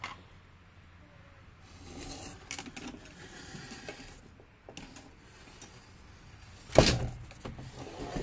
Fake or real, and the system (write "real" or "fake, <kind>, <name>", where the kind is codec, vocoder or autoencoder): real